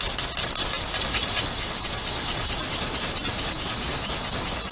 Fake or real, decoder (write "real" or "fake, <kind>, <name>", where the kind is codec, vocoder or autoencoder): real